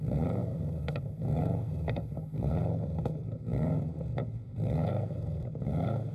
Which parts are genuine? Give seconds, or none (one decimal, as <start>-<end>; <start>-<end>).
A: none